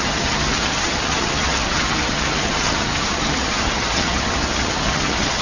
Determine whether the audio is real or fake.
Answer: fake